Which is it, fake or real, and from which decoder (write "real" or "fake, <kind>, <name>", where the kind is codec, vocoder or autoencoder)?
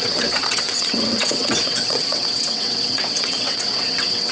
fake, vocoder, WaveNeXt